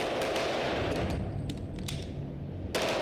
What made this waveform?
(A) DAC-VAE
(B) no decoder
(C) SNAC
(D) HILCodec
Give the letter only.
B